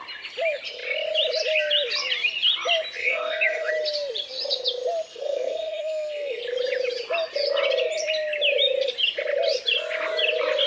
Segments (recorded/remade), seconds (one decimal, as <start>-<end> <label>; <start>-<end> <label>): 0.0-3.0 recorded; 3.0-3.7 remade; 3.7-5.1 recorded; 5.1-6.4 remade; 6.4-10.7 recorded